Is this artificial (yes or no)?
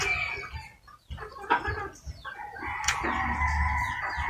no